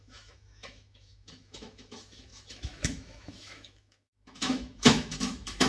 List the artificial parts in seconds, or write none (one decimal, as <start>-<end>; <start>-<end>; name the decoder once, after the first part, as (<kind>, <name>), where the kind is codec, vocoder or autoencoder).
0.0-5.7 (autoencoder, DAC-VAE)